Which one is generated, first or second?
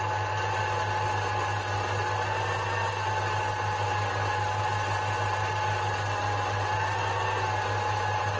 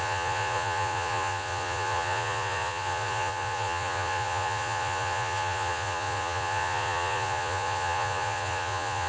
second